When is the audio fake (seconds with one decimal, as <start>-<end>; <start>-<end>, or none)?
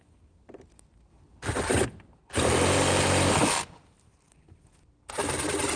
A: none